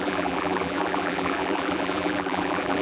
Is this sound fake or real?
fake